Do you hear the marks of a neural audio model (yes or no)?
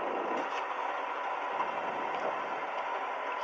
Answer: no